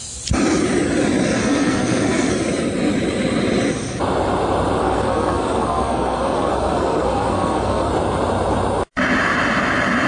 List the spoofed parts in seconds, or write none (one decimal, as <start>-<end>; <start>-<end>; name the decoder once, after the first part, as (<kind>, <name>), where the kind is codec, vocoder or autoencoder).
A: 1.4-2.3 (codec, SNAC); 4.8-7.9